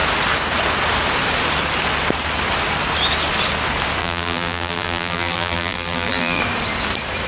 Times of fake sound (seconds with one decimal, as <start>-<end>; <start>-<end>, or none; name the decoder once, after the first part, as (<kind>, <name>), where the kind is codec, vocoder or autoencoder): 4.0-6.4 (vocoder, BigVGAN v2)